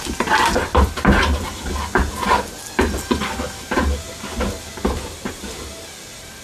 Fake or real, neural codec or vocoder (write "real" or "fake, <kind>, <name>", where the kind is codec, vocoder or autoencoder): real